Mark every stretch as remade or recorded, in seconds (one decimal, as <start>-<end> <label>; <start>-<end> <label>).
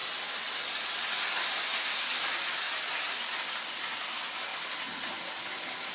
0.0-5.9 recorded